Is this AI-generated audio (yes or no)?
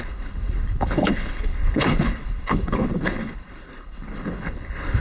yes